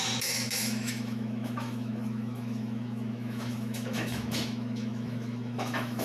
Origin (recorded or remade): remade